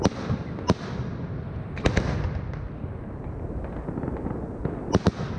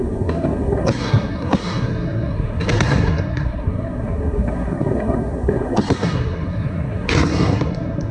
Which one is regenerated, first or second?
second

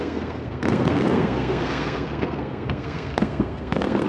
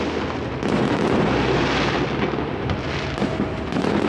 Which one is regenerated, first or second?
first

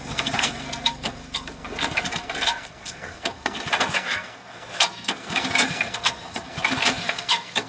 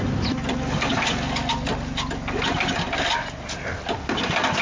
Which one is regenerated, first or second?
first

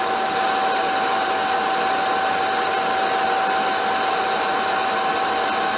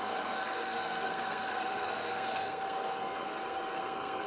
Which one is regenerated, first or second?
second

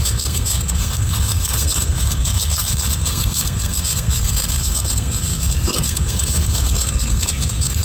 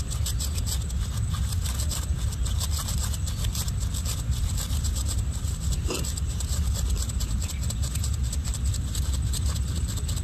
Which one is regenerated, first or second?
first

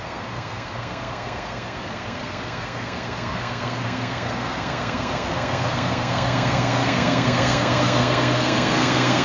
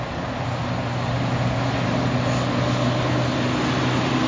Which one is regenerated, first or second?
first